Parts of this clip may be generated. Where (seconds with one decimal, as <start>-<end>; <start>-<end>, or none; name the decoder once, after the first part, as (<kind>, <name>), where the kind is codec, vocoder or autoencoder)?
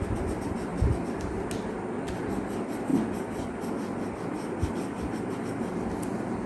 none